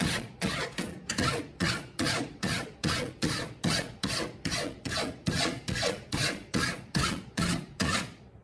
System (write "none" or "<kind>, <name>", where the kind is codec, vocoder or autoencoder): vocoder, Vocos